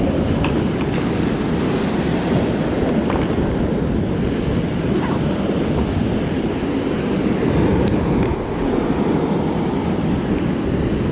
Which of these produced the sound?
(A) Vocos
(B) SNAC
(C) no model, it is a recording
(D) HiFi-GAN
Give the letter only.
C